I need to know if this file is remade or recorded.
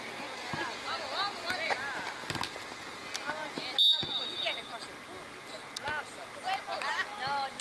recorded